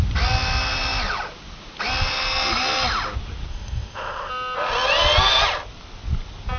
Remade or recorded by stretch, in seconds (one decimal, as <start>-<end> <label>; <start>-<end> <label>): 0.0-3.5 recorded; 3.5-4.3 remade; 4.3-6.6 recorded